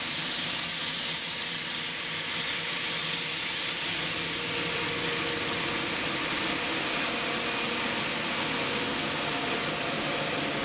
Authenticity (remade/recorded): recorded